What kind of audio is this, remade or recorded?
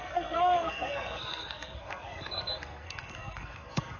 remade